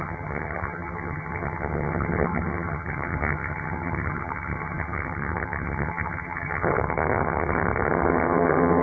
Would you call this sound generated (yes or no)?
yes